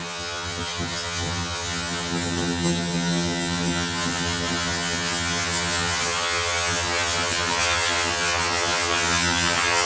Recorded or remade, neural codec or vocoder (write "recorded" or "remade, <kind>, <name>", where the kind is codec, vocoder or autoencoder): remade, vocoder, HiFi-GAN